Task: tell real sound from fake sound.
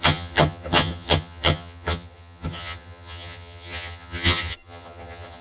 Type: fake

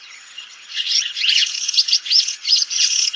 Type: fake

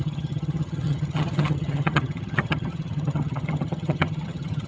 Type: fake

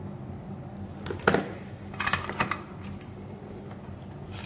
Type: real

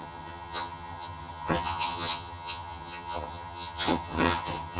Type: fake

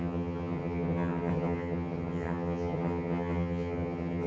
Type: fake